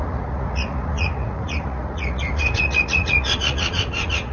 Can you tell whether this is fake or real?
fake